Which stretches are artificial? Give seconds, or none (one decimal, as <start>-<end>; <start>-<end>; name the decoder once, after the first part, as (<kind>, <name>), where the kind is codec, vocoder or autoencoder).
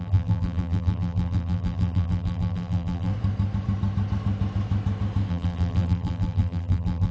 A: 0.0-3.1 (vocoder, BigVGAN v2); 5.3-7.1